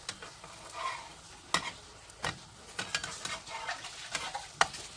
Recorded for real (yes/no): yes